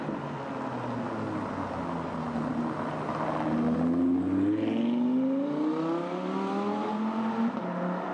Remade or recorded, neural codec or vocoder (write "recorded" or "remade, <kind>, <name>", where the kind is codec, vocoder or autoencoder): recorded